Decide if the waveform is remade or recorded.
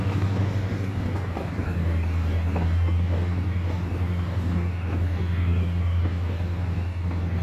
remade